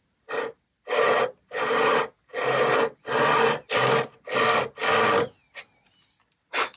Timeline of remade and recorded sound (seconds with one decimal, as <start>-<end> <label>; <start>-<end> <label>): 0.0-6.8 recorded